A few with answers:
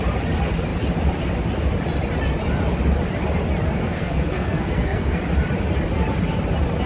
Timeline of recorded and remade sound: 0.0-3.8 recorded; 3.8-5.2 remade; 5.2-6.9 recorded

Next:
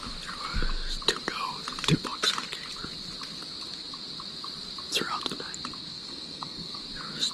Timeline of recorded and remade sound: 0.0-5.9 recorded; 5.9-6.8 remade; 6.8-7.3 recorded

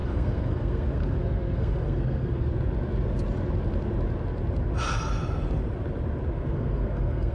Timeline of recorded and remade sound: 0.0-2.5 remade; 2.5-6.3 recorded; 6.3-7.3 remade

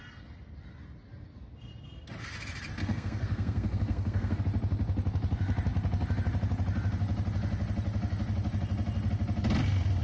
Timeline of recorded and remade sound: 0.0-2.8 recorded; 2.8-4.4 remade; 4.4-10.0 recorded

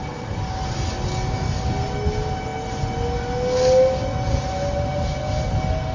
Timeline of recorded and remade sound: 0.0-5.9 recorded